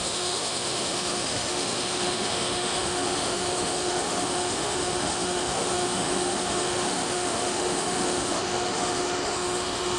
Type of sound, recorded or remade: remade